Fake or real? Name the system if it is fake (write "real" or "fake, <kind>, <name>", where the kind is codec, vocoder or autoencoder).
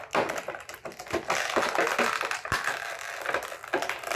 real